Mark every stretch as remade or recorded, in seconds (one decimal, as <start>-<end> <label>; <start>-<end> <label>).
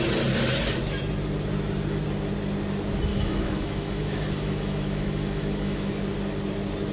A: 0.0-3.1 recorded; 3.1-5.9 remade; 5.9-6.9 recorded